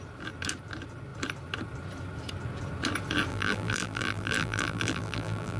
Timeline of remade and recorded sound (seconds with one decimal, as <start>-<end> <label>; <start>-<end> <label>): 0.0-3.3 recorded; 3.3-5.6 remade